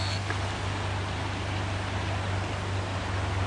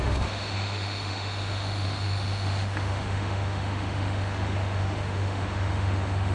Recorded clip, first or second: first